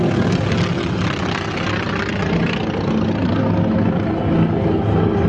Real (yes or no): yes